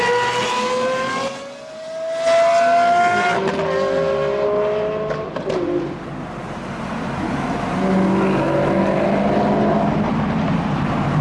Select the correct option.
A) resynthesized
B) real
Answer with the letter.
B